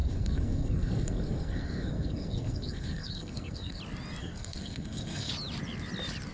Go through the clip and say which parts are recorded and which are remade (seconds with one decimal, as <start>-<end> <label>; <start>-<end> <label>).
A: 0.0-3.8 remade; 3.8-4.2 recorded; 4.2-5.3 remade; 5.3-6.3 recorded